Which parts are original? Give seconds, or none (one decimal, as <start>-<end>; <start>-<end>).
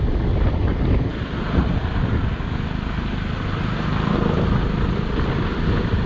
0.0-1.1; 1.8-6.1